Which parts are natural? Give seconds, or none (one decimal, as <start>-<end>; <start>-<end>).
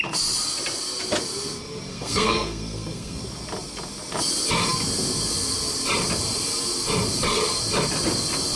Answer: 0.0-1.9; 3.2-8.6